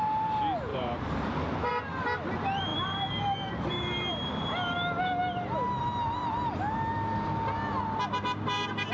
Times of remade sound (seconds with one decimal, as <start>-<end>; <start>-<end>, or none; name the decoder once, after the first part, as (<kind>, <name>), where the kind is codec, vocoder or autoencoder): 0.7-1.7 (vocoder, BigVGAN v2)